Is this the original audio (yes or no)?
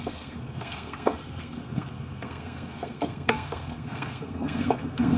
no